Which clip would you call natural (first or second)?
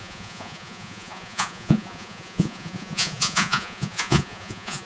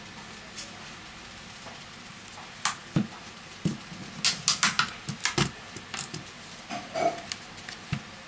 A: second